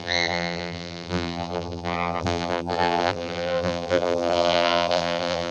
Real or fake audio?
fake